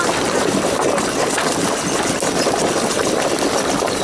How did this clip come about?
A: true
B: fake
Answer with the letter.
A